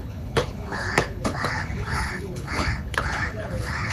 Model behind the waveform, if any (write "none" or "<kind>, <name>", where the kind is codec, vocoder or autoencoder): codec, HILCodec